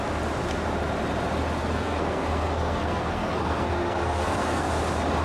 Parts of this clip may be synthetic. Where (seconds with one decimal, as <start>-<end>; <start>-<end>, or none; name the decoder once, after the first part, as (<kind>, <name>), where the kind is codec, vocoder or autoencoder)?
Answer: 1.6-4.7 (codec, SNAC)